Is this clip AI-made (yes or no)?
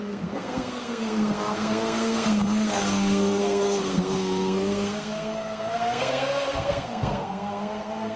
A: yes